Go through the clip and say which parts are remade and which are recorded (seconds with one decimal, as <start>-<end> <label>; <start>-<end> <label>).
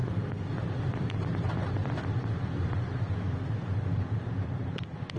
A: 0.0-3.1 remade; 3.1-5.2 recorded